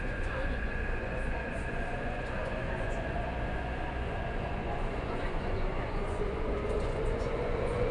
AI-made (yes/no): yes